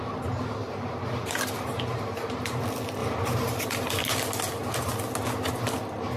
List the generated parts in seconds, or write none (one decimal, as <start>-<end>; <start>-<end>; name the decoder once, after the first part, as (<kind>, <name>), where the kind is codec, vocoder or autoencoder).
0.6-2.6 (vocoder, BigVGAN v2); 3.0-4.1